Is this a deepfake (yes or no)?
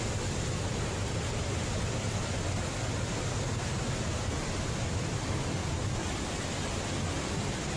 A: no